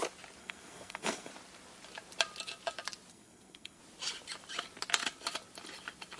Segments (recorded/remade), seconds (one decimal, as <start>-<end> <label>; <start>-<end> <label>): 0.0-0.4 recorded; 0.4-1.3 remade; 1.3-3.1 recorded; 3.1-3.8 remade; 3.8-6.2 recorded